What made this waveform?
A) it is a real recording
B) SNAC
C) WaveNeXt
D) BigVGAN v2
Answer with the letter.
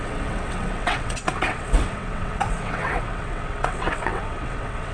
C